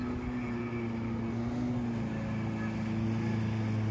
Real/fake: real